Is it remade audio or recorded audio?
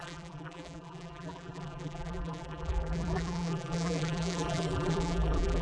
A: remade